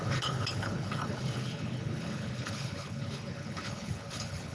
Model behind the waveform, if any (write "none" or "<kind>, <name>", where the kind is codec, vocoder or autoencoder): codec, HILCodec